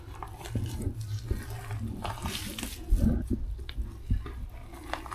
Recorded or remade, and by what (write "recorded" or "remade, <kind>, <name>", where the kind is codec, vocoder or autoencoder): recorded